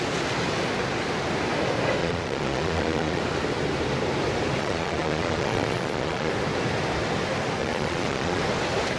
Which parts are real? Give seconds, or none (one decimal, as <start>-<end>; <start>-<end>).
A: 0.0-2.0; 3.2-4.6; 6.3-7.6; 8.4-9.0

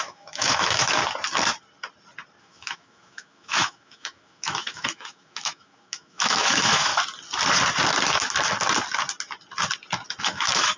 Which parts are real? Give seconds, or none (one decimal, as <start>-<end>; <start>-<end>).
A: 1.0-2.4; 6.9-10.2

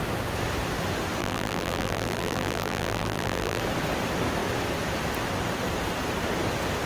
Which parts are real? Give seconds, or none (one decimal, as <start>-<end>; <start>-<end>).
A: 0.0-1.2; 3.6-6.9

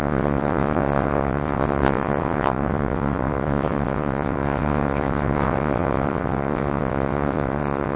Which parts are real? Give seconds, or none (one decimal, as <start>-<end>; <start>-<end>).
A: none

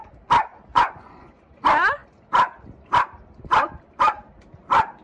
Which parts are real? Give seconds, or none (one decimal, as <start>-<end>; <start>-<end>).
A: 0.0-0.7; 1.4-5.0